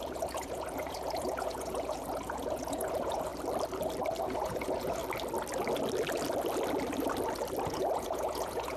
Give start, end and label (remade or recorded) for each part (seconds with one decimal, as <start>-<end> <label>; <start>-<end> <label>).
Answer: 0.0-3.3 remade; 3.3-4.2 recorded; 4.2-5.0 remade; 5.0-7.6 recorded; 7.6-8.8 remade